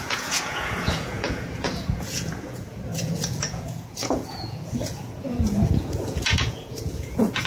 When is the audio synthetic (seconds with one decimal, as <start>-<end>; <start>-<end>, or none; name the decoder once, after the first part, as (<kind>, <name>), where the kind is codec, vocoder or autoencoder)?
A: 0.0-7.5 (vocoder, Vocos)